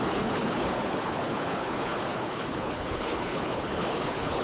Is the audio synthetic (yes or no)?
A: yes